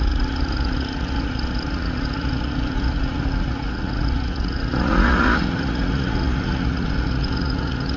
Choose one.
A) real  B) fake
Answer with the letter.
B